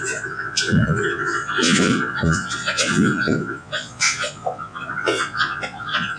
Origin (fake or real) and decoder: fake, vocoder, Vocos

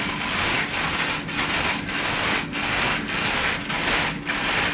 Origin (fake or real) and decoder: real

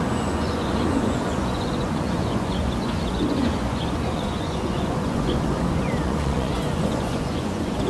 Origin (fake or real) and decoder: fake, vocoder, Vocos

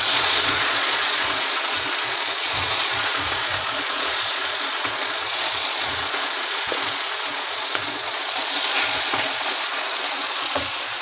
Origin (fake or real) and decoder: fake, vocoder, Vocos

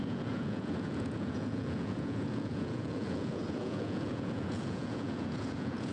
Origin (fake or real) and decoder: fake, vocoder, Vocos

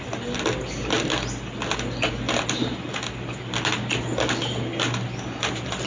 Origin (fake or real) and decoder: real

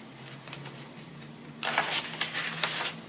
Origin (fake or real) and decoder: real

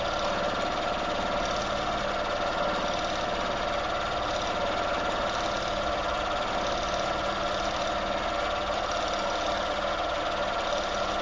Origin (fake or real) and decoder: real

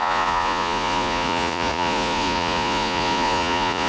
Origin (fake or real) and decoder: fake, vocoder, Vocos